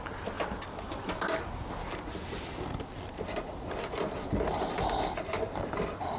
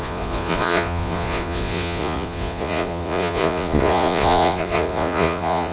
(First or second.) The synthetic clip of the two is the second